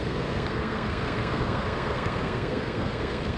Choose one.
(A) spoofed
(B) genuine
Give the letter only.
A